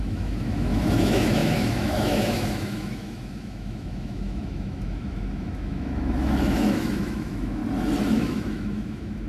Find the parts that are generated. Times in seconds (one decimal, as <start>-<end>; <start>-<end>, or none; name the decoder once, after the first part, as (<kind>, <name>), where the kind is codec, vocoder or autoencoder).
0.0-7.6 (autoencoder, DAC-VAE); 8.1-9.3